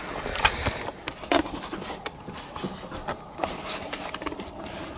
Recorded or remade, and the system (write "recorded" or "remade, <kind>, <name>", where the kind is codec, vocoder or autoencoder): recorded